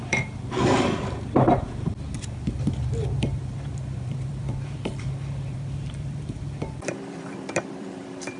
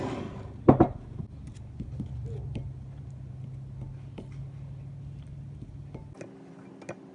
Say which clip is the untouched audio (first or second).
second